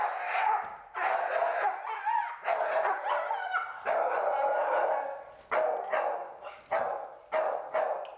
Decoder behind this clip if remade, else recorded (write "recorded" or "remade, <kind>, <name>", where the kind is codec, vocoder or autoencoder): recorded